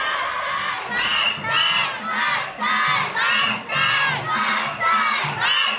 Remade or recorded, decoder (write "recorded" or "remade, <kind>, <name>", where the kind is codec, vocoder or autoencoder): recorded